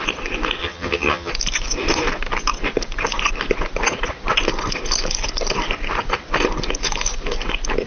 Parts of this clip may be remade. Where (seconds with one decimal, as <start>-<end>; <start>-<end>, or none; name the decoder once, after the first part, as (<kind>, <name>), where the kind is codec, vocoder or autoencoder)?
0.6-1.3 (vocoder, HiFi-GAN)